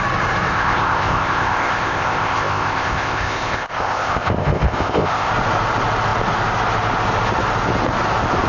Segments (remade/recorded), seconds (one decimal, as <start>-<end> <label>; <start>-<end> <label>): 0.0-0.5 recorded; 0.5-5.3 remade; 5.3-8.5 recorded